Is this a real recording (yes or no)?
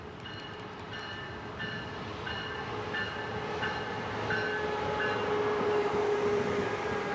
yes